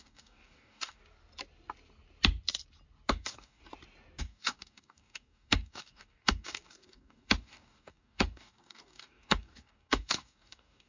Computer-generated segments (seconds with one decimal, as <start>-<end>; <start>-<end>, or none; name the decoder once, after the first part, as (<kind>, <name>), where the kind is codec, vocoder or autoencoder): 0.0-1.0 (codec, DAC); 3.1-3.6; 4.2-10.9